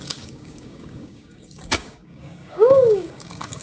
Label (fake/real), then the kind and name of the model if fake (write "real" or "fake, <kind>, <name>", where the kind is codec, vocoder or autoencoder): fake, codec, DAC